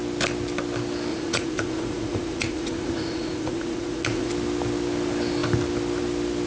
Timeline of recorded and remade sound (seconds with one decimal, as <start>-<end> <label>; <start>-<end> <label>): 0.0-1.1 recorded; 1.1-4.3 remade; 4.3-6.5 recorded